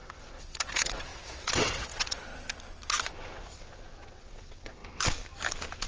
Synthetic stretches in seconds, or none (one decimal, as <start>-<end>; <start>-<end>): 0.0-2.3; 3.0-4.8